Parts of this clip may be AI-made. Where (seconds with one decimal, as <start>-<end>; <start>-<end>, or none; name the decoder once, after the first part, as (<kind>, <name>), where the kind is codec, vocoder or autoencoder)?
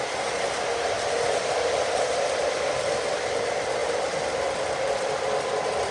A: none